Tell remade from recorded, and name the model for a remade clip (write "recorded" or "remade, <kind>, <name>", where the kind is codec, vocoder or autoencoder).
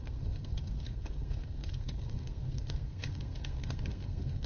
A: remade, codec, SNAC